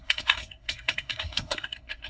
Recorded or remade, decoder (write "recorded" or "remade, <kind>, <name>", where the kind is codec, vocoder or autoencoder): remade, codec, SNAC